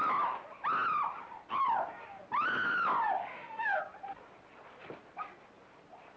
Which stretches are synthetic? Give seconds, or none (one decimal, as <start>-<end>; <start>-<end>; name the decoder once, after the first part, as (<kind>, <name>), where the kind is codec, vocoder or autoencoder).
3.2-3.8 (autoencoder, DAC-VAE)